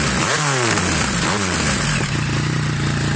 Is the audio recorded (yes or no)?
yes